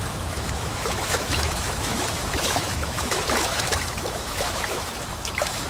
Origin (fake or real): fake